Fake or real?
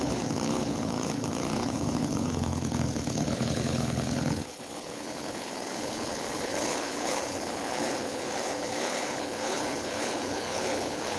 fake